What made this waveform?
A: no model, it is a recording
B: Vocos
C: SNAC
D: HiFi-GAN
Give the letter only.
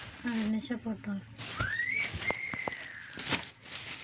A